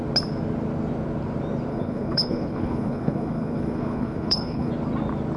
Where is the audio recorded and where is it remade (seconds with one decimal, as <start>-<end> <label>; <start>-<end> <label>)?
0.0-1.7 recorded; 1.7-4.7 remade; 4.7-5.4 recorded